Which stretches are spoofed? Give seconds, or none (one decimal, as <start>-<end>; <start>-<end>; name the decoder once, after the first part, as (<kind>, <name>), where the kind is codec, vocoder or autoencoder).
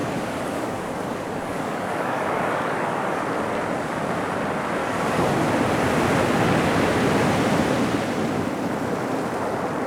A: 0.0-3.2 (codec, DAC); 4.8-5.3